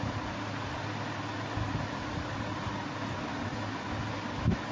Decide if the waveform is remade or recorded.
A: recorded